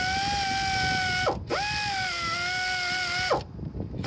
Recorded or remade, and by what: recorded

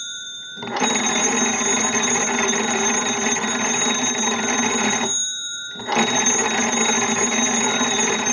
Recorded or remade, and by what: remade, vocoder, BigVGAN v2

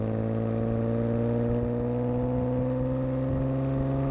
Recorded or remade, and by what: recorded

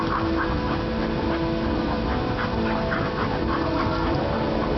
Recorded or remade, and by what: recorded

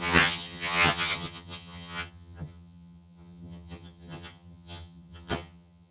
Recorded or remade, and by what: remade, vocoder, HiFi-GAN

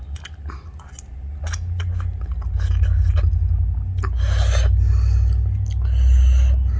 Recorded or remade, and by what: recorded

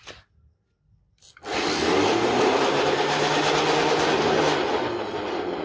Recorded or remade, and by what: recorded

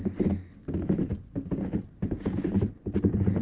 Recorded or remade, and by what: recorded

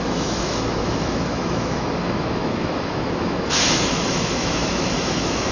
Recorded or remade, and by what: remade, autoencoder, DAC-VAE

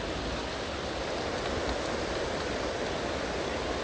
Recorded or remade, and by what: recorded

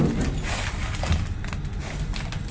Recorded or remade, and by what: recorded